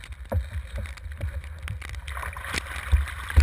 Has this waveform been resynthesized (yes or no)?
no